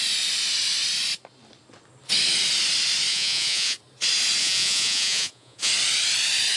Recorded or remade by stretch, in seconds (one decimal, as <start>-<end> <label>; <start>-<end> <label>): 0.0-3.1 recorded; 3.1-3.8 remade; 3.8-4.4 recorded; 4.4-5.7 remade; 5.7-6.6 recorded